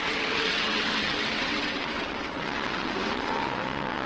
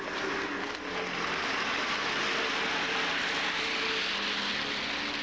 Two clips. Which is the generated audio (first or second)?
first